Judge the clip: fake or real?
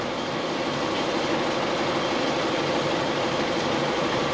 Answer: real